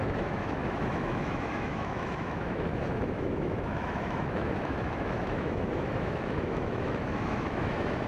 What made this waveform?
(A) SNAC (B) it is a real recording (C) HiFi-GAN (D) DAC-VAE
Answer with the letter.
D